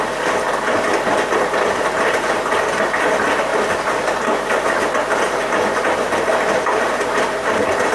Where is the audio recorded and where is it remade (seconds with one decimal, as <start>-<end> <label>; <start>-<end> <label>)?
0.0-7.9 recorded